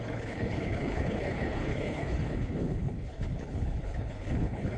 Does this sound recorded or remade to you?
remade